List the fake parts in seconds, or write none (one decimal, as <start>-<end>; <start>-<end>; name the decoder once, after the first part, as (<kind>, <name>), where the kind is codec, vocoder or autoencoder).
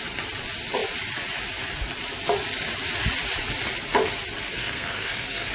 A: 4.5-5.5 (codec, SNAC)